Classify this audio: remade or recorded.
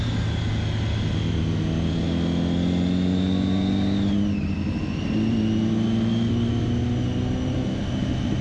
recorded